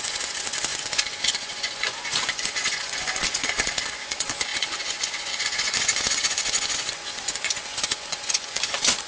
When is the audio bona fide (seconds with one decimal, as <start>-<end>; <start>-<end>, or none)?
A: none